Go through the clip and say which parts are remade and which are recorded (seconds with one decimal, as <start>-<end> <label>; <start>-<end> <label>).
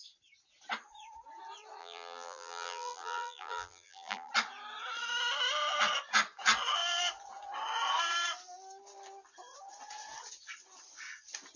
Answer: 0.0-1.8 recorded; 1.8-4.3 remade; 4.3-11.6 recorded